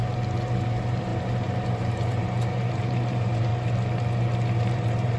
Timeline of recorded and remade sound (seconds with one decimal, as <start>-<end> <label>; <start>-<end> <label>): 0.0-0.6 recorded; 0.6-3.5 remade; 3.5-4.6 recorded; 4.6-5.2 remade